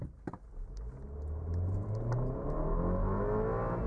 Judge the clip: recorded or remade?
recorded